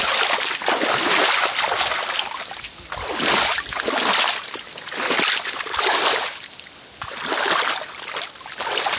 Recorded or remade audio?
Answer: recorded